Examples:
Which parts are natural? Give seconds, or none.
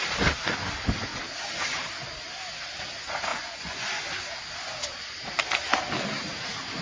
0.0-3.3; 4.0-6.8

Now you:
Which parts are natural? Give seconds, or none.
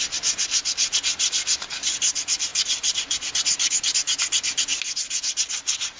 0.0-2.5; 3.3-6.0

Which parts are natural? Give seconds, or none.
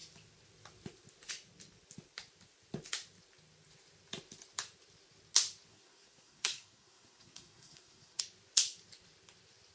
0.0-5.7; 8.2-9.7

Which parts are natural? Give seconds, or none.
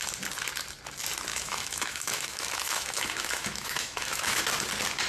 0.0-1.3; 4.4-5.1